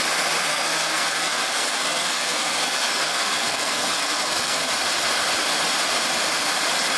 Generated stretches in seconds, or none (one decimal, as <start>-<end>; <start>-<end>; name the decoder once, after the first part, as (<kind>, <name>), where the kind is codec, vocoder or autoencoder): 0.5-4.7 (codec, SNAC)